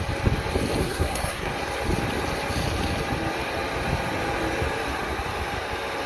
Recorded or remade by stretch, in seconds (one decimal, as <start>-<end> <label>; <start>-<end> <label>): 0.0-0.8 recorded; 0.8-1.5 remade; 1.5-6.1 recorded